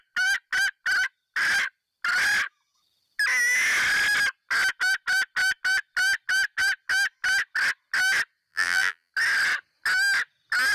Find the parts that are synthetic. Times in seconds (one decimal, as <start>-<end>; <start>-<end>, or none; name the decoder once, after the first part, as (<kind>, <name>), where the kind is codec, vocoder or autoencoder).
8.5-9.1 (vocoder, BigVGAN v2)